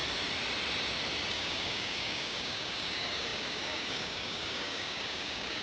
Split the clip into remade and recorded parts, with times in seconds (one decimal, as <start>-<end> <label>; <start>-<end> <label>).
0.0-1.3 recorded; 1.3-5.6 remade